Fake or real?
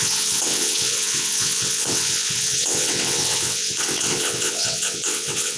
fake